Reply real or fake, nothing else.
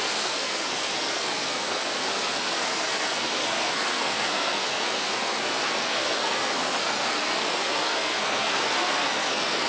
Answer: fake